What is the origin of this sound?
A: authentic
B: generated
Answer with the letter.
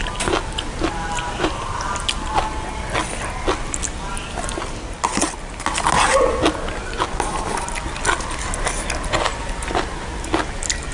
A